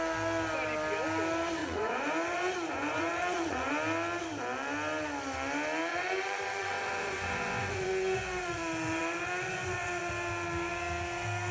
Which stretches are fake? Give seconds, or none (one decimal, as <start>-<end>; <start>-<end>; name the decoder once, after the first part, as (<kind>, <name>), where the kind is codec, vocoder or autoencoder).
1.6-3.7 (vocoder, Vocos); 5.9-10.1